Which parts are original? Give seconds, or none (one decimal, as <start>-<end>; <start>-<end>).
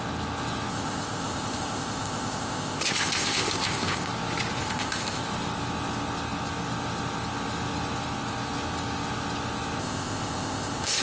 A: 0.0-0.7; 4.1-4.6; 5.2-9.8